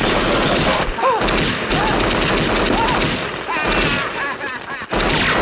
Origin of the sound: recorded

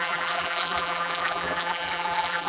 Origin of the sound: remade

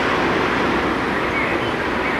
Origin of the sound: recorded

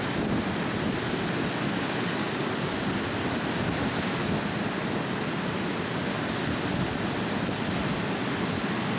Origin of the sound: recorded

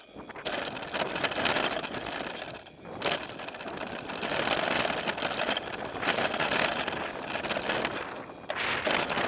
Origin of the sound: recorded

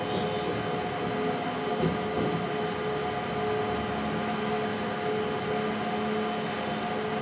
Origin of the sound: recorded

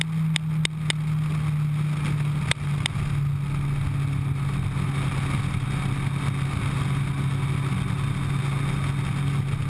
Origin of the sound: recorded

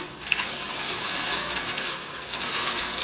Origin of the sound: remade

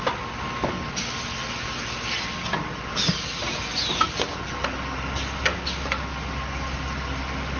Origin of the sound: recorded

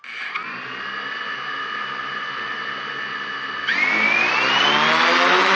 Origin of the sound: recorded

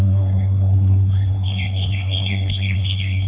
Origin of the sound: remade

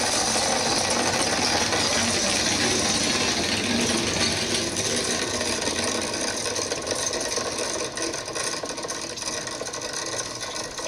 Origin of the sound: recorded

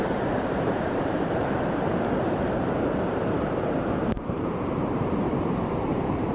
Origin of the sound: remade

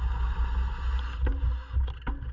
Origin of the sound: recorded